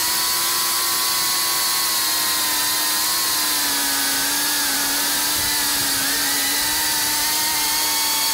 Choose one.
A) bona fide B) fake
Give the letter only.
A